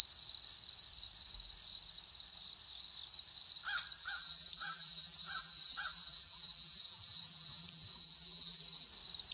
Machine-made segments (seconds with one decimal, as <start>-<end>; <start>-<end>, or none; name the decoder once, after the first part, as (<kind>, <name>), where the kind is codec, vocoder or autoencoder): 4.0-8.9 (vocoder, BigVGAN v2)